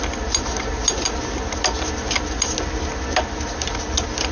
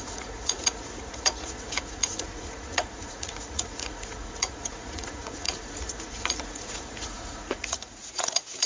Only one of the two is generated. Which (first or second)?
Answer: second